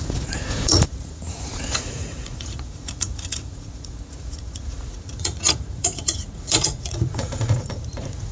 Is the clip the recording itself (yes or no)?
no